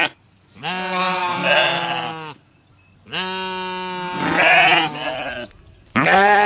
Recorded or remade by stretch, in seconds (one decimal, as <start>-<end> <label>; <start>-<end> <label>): 0.0-6.5 recorded